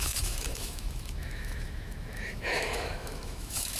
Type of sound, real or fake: fake